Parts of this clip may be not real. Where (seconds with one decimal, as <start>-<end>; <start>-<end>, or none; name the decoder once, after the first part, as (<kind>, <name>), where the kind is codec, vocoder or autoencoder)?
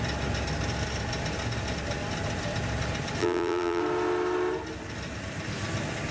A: 3.2-3.8 (vocoder, BigVGAN v2)